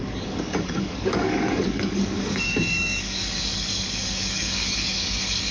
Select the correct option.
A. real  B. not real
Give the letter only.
B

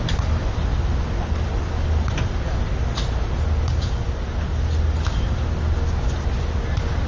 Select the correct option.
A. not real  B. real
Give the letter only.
B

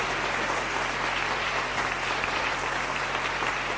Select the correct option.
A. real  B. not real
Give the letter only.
A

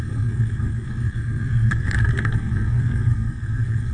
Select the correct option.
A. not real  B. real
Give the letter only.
A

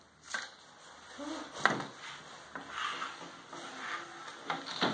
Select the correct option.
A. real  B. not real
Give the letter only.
A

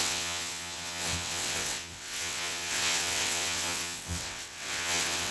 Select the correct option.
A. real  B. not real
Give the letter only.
B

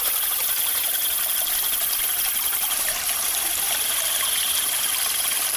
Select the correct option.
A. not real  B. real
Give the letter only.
B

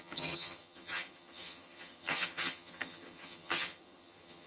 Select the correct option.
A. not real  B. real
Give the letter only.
A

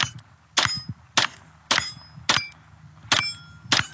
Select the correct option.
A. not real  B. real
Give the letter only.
B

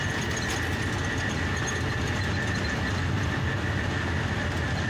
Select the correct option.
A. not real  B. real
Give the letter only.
B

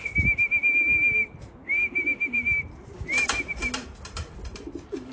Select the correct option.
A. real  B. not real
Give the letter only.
A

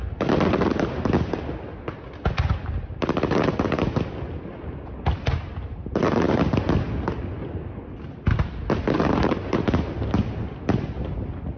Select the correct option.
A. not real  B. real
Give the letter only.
B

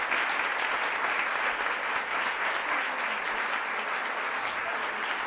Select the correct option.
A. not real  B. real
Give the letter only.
B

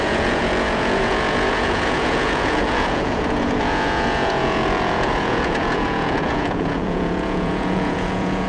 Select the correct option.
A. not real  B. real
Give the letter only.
A